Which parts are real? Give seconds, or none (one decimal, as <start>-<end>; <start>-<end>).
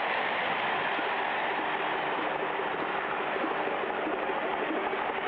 0.0-5.3